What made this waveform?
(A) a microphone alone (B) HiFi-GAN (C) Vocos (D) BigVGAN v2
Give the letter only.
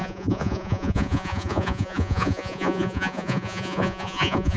C